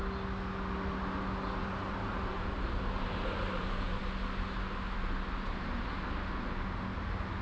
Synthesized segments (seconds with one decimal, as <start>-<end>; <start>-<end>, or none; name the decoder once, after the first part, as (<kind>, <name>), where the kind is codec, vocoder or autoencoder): 1.6-4.0 (vocoder, BigVGAN v2)

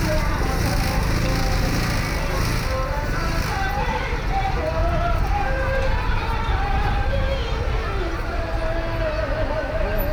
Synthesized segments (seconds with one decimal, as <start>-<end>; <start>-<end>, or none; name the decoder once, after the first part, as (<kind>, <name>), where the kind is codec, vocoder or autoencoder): none

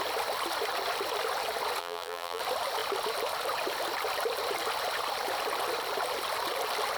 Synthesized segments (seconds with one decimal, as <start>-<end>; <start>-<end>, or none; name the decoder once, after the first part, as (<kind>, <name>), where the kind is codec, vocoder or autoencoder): 1.8-2.4 (vocoder, BigVGAN v2)

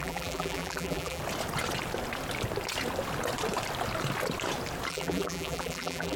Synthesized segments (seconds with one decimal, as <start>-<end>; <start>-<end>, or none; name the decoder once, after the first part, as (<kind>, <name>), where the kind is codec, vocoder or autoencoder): 0.0-1.2 (vocoder, BigVGAN v2); 4.9-6.2

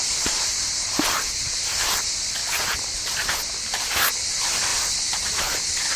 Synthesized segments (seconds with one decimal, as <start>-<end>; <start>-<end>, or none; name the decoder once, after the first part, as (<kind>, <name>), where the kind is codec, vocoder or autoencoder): 0.0-6.0 (vocoder, BigVGAN v2)

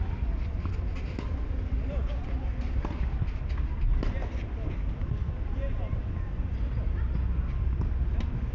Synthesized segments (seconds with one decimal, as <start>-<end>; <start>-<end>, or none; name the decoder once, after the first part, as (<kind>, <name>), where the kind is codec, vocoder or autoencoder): none

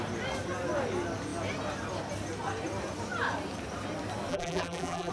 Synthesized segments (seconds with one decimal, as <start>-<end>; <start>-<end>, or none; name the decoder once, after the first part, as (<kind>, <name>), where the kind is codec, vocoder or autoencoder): 4.3-5.1 (vocoder, BigVGAN v2)